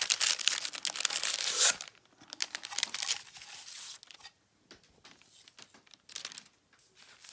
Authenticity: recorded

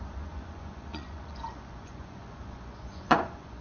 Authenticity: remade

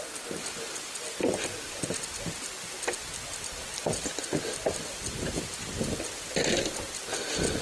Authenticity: recorded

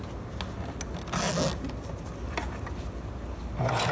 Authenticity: recorded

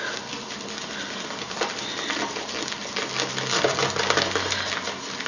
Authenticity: recorded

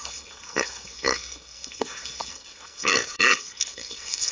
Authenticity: remade